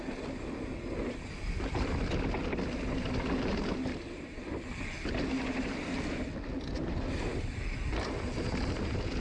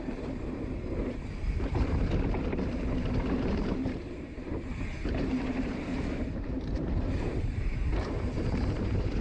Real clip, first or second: first